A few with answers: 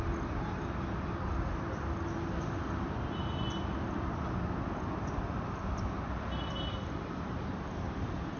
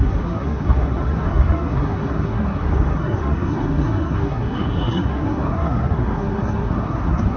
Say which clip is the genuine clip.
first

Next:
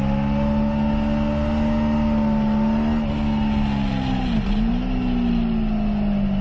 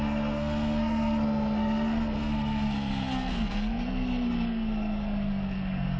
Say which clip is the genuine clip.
first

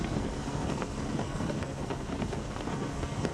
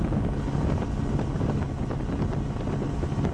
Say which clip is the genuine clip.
second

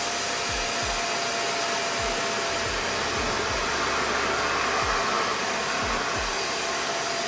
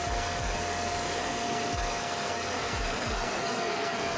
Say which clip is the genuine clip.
first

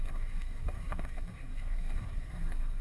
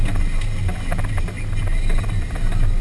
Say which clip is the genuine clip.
second